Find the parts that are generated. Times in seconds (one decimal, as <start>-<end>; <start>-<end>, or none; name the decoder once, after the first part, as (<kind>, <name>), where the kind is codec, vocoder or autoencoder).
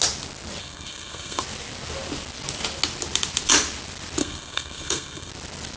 0.6-1.4 (codec, SNAC); 4.2-5.3